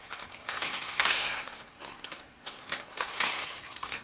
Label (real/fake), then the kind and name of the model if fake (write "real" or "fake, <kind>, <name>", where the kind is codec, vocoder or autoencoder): fake, codec, SNAC